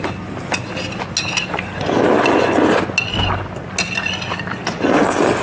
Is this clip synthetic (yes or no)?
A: no